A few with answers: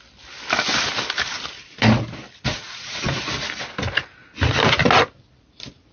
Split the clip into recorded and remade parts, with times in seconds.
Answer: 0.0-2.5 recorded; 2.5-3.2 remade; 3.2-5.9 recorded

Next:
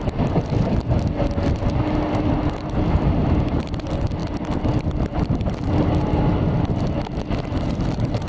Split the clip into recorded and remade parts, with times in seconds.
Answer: 0.0-8.3 recorded

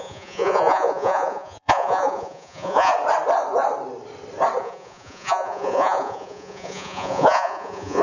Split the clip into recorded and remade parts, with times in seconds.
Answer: 0.0-2.9 remade; 2.9-4.6 recorded; 4.6-8.0 remade

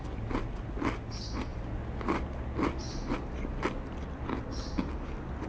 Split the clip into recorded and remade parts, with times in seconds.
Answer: 0.0-5.5 recorded

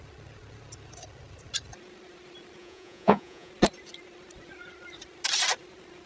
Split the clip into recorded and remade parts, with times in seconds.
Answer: 0.0-2.6 recorded; 2.6-3.5 remade; 3.5-6.1 recorded

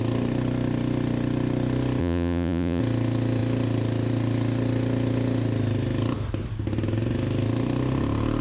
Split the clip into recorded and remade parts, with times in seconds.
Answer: 0.0-2.0 recorded; 2.0-2.8 remade; 2.8-8.4 recorded

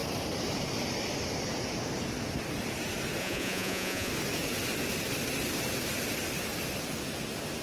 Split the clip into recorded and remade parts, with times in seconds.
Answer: 0.0-3.2 recorded; 3.2-4.1 remade; 4.1-7.6 recorded